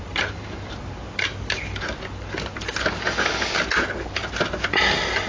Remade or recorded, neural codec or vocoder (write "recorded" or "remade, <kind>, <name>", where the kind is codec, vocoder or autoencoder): recorded